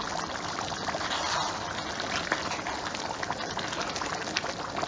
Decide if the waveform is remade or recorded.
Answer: recorded